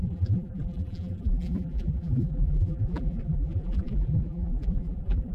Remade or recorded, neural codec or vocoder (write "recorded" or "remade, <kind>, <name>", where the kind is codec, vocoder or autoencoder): remade, vocoder, BigVGAN v2